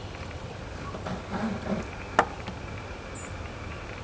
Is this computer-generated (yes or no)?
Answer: no